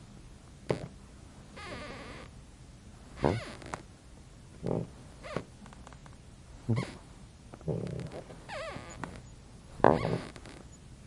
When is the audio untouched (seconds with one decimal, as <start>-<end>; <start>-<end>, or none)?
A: 0.0-6.0; 8.7-9.3; 10.3-11.1